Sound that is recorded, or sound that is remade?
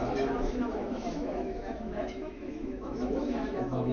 remade